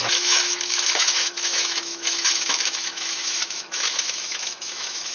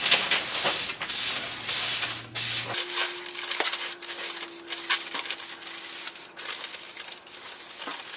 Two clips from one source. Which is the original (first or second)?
second